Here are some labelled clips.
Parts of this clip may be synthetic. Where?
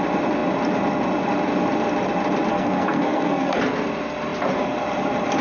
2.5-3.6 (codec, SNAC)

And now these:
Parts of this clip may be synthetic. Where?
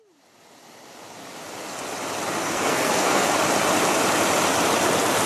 2.4-3.3 (codec, SNAC)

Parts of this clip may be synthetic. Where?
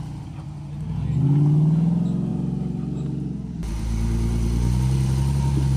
2.3-5.8 (vocoder, BigVGAN v2)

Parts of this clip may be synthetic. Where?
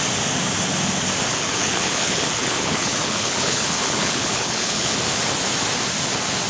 1.3-5.0 (codec, HILCodec)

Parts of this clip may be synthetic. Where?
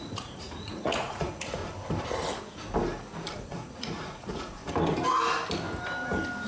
0.0-1.6 (vocoder, Vocos); 3.4-4.6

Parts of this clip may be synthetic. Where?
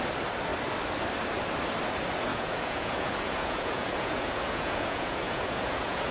2.3-6.1 (vocoder, Vocos)